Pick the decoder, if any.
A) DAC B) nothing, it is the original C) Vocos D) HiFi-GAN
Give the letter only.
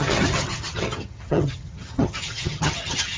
D